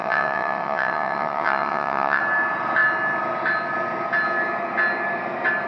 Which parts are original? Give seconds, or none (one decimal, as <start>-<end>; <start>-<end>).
2.2-5.7